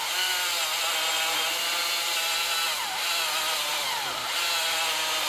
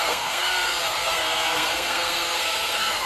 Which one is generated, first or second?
second